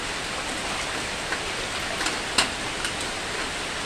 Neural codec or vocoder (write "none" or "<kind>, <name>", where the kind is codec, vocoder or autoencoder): none